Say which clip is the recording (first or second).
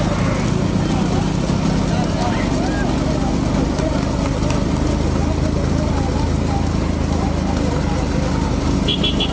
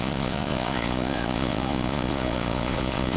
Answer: first